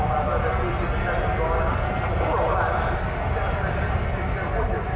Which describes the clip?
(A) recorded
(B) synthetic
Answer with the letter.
A